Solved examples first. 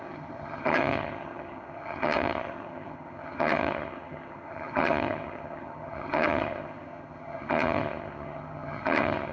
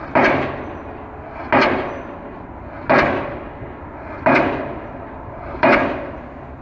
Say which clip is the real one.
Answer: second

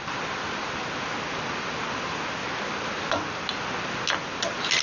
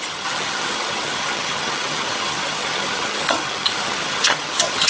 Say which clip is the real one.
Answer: first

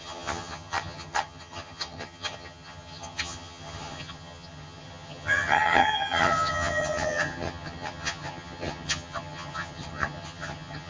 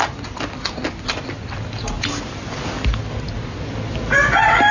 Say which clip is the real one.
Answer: second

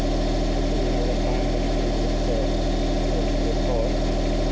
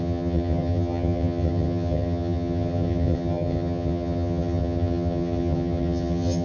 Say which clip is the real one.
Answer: first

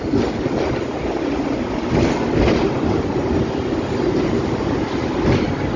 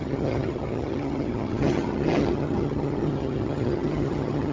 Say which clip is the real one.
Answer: first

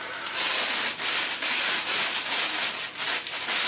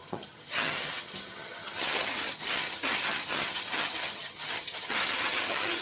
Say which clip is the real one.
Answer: first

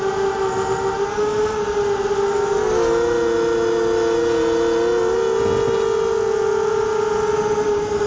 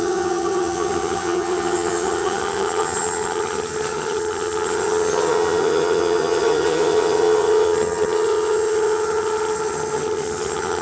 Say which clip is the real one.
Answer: first